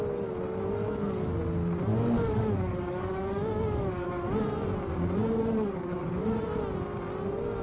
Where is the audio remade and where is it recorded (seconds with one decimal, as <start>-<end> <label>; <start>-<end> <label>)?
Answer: 0.0-0.8 recorded; 0.8-1.4 remade; 1.4-1.9 recorded; 1.9-4.1 remade; 4.1-5.4 recorded; 5.4-6.3 remade; 6.3-7.6 recorded